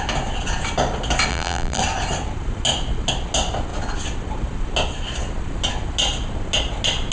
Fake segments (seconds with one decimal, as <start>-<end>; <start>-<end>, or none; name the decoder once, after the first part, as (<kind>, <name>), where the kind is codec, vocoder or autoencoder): 1.3-1.8 (vocoder, BigVGAN v2)

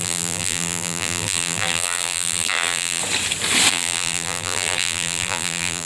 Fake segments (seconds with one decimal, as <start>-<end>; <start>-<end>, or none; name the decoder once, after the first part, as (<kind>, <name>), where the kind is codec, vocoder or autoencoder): 0.0-3.0 (vocoder, BigVGAN v2); 3.7-5.9

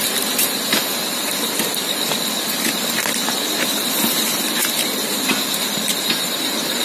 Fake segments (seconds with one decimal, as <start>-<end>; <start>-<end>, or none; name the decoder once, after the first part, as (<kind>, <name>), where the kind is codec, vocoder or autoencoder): 5.9-6.8 (vocoder, BigVGAN v2)

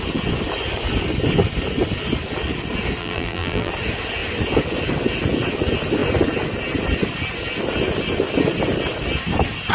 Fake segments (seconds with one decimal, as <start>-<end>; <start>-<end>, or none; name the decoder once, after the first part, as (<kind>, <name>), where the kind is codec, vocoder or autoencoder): 3.0-3.7 (vocoder, BigVGAN v2)

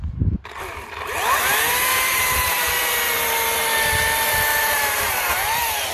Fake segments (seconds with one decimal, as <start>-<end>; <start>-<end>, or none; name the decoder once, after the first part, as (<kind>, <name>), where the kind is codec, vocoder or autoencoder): 1.9-2.7 (vocoder, BigVGAN v2); 4.5-5.9

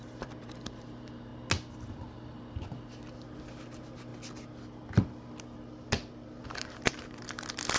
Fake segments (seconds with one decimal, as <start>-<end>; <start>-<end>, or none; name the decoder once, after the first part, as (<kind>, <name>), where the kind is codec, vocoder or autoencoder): 0.0-1.3 (vocoder, BigVGAN v2); 1.9-4.1; 6.4-7.8

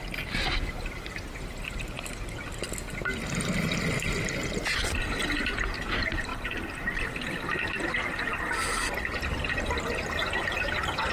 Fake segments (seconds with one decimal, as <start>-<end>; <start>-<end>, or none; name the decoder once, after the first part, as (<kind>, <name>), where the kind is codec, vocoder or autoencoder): 6.3-7.1 (vocoder, BigVGAN v2)